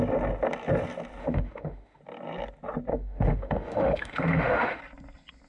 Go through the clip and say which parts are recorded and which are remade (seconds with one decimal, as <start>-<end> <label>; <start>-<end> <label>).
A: 0.0-1.2 recorded; 1.2-2.0 remade; 2.0-2.9 recorded; 2.9-4.8 remade; 4.8-5.5 recorded